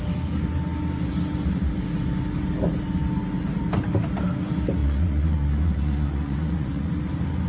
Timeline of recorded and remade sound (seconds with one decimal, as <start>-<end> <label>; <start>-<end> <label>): 0.0-4.8 recorded; 4.8-7.0 remade; 7.0-7.5 recorded